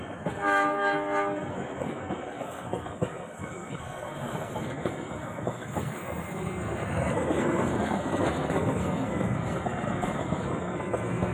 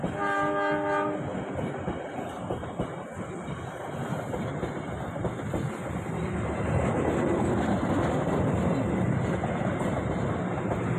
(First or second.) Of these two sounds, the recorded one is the second